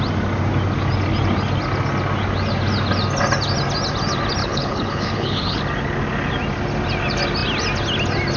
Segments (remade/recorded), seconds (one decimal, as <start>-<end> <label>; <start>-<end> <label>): 0.0-4.4 recorded; 4.4-5.6 remade; 5.6-8.4 recorded